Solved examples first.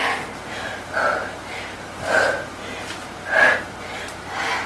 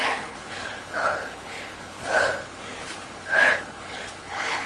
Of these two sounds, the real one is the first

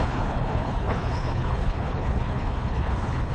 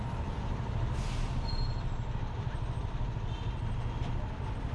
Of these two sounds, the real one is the second